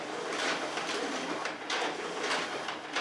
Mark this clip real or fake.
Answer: real